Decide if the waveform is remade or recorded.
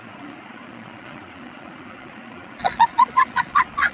remade